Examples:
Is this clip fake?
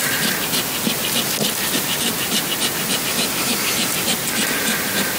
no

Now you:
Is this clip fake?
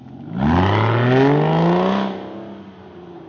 no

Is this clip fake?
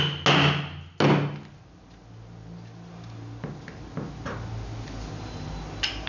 no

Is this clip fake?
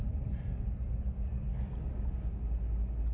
no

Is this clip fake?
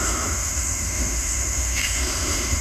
yes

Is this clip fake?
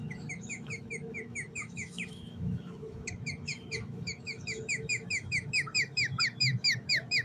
yes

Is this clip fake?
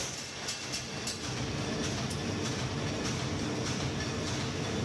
no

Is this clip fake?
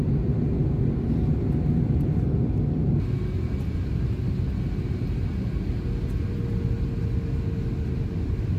no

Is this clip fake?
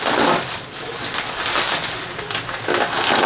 no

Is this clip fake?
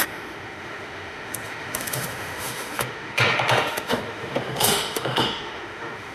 yes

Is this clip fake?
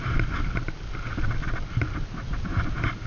no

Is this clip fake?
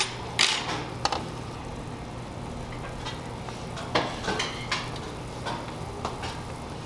no